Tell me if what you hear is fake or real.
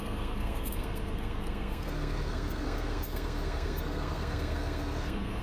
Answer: fake